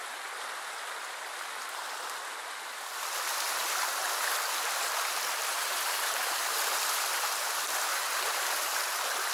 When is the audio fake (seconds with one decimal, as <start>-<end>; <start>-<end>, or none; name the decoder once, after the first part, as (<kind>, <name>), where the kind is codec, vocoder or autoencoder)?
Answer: 5.5-6.8 (vocoder, BigVGAN v2); 7.9-8.8

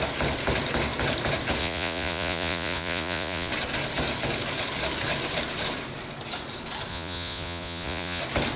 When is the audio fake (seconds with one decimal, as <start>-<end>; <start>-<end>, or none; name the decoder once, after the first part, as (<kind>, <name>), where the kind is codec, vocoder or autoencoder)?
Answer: 1.6-3.5 (vocoder, Vocos); 6.9-8.2

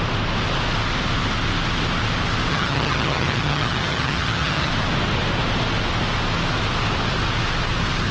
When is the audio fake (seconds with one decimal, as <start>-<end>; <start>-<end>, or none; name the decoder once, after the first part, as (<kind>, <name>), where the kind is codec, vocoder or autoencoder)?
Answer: 2.5-4.7 (vocoder, HiFi-GAN)

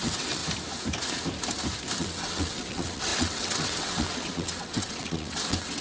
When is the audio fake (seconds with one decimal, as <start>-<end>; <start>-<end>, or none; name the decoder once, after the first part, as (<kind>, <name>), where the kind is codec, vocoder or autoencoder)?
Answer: 0.0-0.4 (vocoder, WaveNeXt); 2.0-5.8

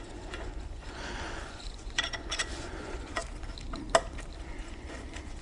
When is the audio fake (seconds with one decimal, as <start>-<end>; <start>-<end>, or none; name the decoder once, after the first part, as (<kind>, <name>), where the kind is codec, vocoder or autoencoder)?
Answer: 0.0-3.2 (vocoder, Vocos); 4.5-5.4